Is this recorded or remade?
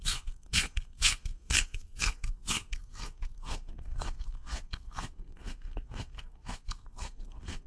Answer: remade